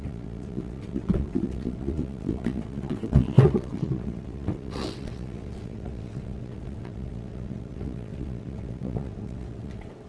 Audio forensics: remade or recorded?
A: remade